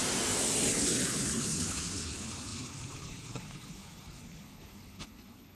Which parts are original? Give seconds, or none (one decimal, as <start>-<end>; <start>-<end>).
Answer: 0.0-0.7